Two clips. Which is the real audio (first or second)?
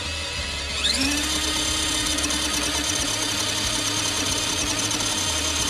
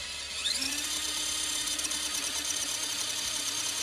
first